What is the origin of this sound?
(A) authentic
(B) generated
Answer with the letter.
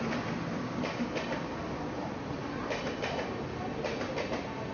A